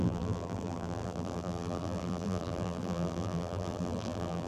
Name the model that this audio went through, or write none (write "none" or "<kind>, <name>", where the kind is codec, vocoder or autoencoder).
vocoder, BigVGAN v2